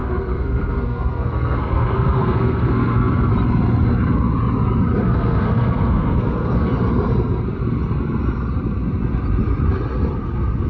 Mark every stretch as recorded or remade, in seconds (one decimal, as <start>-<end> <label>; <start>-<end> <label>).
0.0-3.3 remade; 3.3-5.0 recorded; 5.0-6.7 remade; 6.7-10.7 recorded